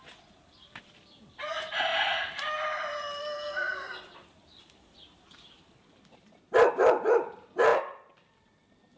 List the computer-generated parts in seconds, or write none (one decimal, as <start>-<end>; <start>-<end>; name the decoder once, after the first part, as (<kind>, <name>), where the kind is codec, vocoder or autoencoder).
0.0-7.7 (vocoder, BigVGAN v2)